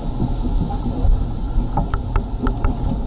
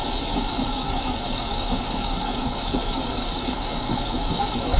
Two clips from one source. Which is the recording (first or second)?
first